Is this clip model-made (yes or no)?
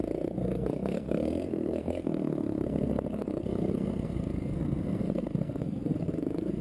yes